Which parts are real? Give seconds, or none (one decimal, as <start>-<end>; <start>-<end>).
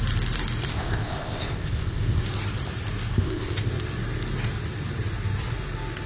0.0-0.7; 2.2-3.1; 3.7-6.1